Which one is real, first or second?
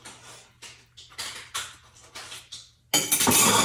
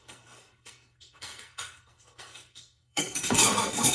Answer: first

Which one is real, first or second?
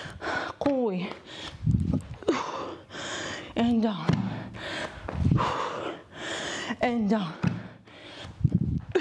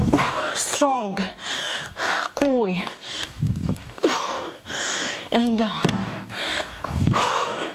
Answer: first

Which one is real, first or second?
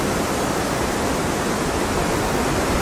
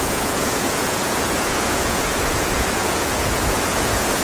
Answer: first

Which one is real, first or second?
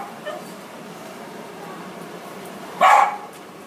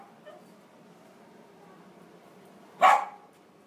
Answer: second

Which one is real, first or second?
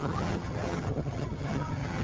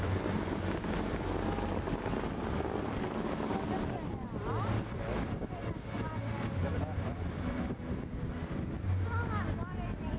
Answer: second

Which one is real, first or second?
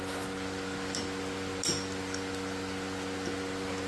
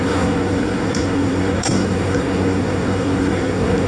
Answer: first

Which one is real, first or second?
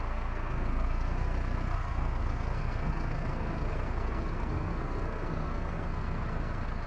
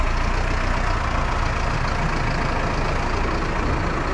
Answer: second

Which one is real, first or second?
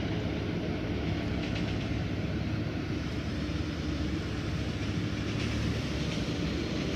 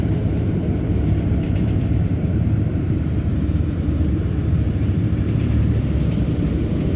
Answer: first